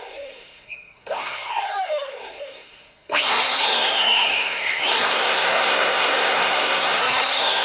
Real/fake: fake